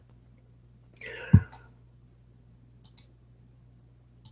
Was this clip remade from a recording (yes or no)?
no